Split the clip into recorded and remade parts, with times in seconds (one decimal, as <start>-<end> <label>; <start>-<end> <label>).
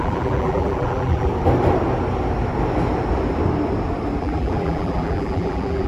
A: 0.0-1.3 remade; 1.3-4.2 recorded; 4.2-5.9 remade